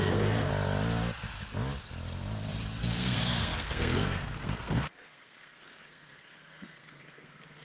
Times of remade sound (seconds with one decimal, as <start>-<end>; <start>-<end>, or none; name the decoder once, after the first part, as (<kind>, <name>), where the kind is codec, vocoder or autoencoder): 0.0-0.5 (codec, SNAC); 2.8-7.6